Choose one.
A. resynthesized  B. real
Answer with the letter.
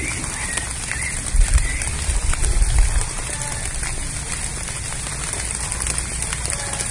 B